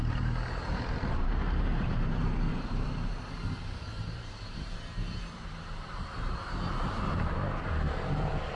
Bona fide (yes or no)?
no